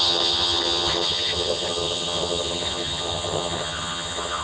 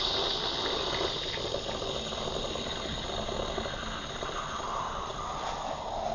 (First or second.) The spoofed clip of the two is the first